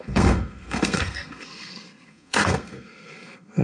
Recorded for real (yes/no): no